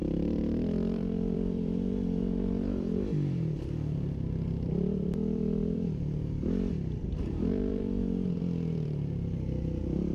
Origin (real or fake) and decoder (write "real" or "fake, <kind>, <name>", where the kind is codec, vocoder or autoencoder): fake, vocoder, BigVGAN v2